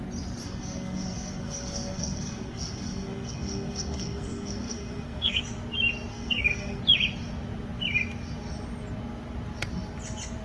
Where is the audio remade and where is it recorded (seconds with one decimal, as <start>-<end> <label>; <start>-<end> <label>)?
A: 0.0-0.4 recorded; 0.4-5.4 remade; 5.4-6.1 recorded; 6.1-6.8 remade; 6.8-10.4 recorded